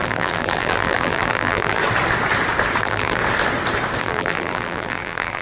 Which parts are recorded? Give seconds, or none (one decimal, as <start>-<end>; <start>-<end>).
1.8-2.8; 3.2-4.0